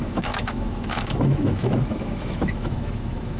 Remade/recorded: remade